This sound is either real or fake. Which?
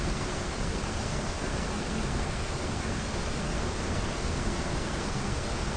fake